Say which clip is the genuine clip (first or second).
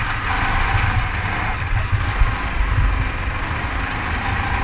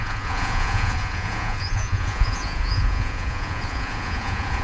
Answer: first